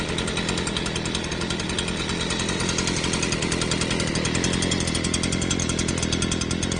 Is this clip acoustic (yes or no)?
yes